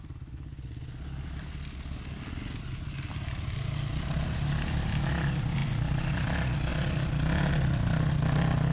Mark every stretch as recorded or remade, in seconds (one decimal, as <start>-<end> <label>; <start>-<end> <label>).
0.0-8.7 recorded